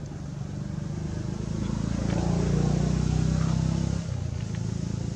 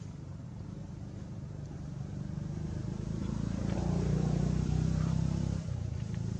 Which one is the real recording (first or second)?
first